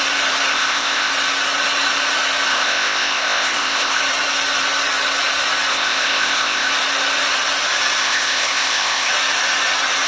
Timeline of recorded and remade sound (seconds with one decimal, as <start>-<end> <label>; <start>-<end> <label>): 0.0-0.5 recorded; 0.5-1.1 remade; 1.1-2.5 recorded; 2.5-4.0 remade; 4.0-5.7 recorded; 5.7-6.7 remade; 6.7-8.0 recorded; 8.0-9.1 remade; 9.1-10.1 recorded